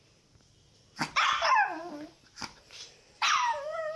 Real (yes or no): no